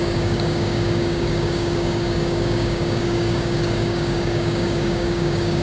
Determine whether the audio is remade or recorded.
remade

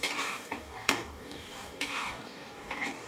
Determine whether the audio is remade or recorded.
remade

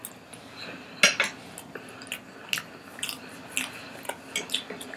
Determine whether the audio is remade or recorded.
recorded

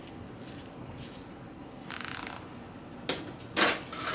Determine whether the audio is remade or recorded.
recorded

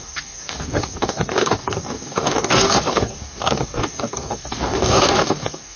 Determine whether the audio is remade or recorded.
remade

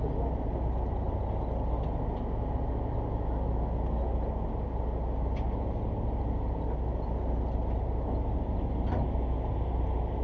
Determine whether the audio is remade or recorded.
recorded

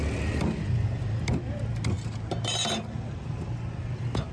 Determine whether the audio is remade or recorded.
recorded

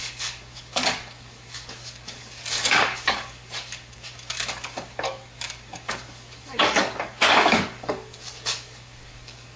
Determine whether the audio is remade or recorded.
remade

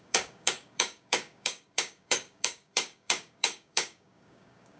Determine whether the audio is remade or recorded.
remade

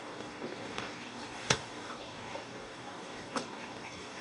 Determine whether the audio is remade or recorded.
remade